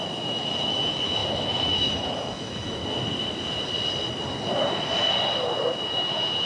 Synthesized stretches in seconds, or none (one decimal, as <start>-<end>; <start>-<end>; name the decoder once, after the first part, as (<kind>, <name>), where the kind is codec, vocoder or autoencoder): 0.0-2.8 (autoencoder, DAC-VAE); 5.9-6.5